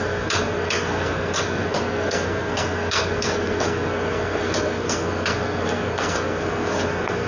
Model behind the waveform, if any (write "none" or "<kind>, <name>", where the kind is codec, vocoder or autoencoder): codec, SNAC